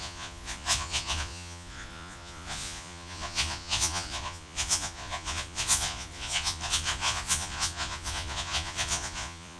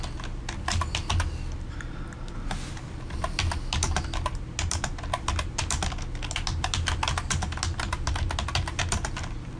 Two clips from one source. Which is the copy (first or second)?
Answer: first